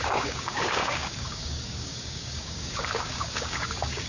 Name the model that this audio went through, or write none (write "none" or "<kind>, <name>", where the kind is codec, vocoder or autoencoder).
codec, DAC